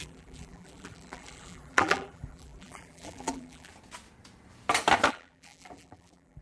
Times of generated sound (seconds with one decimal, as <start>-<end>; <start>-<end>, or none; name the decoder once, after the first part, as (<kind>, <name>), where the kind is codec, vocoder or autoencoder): 0.0-3.7 (vocoder, BigVGAN v2); 5.1-6.4